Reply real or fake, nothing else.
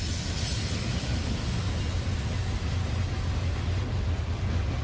real